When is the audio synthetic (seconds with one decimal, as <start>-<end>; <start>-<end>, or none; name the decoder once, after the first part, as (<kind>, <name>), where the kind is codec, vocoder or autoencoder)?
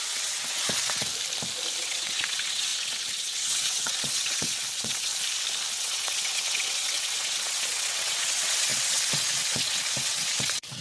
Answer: 0.0-1.1 (vocoder, WaveNeXt); 1.8-5.1; 5.7-10.8